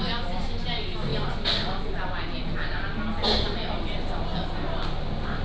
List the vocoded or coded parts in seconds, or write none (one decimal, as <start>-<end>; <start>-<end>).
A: none